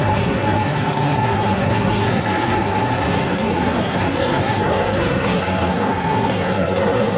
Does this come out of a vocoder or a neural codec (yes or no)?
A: yes